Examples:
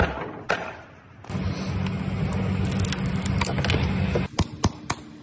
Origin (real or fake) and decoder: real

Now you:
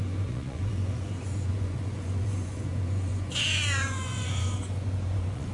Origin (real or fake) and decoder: fake, vocoder, Vocos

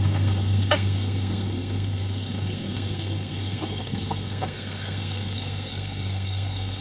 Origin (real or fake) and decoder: fake, codec, SNAC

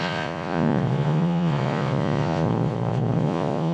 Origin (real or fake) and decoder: fake, vocoder, Vocos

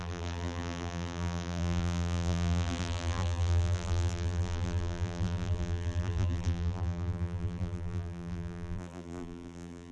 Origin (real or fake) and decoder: fake, vocoder, BigVGAN v2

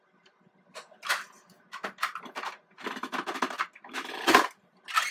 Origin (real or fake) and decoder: real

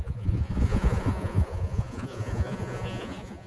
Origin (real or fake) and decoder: fake, vocoder, Vocos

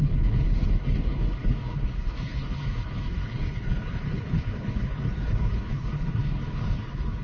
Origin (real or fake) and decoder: fake, codec, HILCodec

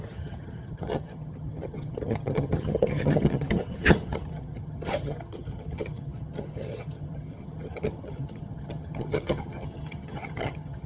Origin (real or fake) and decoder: fake, vocoder, HiFi-GAN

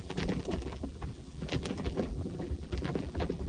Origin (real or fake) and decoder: fake, vocoder, BigVGAN v2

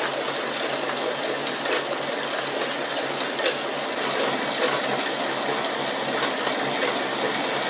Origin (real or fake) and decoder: real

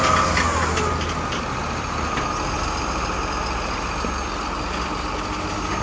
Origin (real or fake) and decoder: real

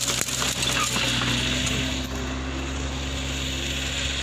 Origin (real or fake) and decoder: real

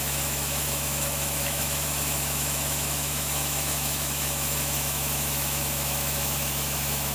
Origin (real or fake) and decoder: fake, autoencoder, DAC-VAE